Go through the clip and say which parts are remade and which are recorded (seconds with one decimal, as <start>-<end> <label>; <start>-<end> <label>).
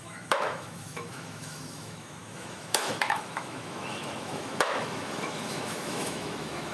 0.0-6.7 remade